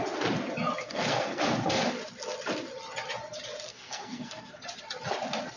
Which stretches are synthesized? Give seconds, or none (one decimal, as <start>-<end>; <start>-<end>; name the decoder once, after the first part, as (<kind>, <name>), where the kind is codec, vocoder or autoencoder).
0.8-1.4 (codec, SNAC); 3.7-4.6